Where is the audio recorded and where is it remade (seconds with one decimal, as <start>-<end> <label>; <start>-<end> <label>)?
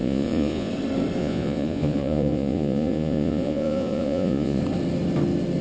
0.0-0.7 remade; 0.7-1.2 recorded; 1.2-4.6 remade; 4.6-5.6 recorded